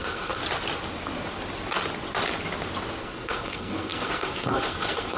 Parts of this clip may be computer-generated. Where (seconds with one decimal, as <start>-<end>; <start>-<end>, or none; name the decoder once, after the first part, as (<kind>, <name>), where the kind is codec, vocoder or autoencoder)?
0.0-0.4 (codec, SNAC); 3.0-5.2